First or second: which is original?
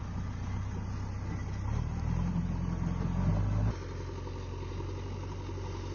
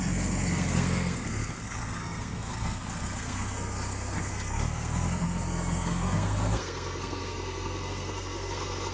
first